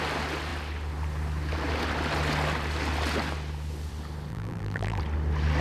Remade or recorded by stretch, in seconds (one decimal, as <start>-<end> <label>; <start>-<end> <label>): 0.0-4.3 recorded; 4.3-5.0 remade; 5.0-5.6 recorded

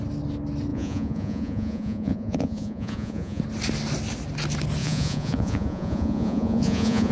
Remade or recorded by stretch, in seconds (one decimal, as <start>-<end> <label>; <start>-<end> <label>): 0.0-0.7 recorded; 0.7-3.4 remade; 3.4-4.8 recorded; 4.8-7.1 remade